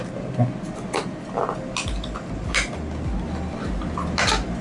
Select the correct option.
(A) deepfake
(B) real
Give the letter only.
B